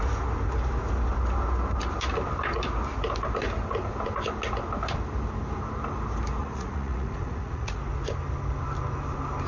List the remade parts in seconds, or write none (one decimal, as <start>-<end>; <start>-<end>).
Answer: 6.4-7.8